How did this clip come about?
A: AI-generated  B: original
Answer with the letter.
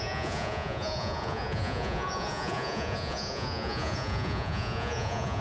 A